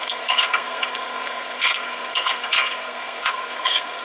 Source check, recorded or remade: remade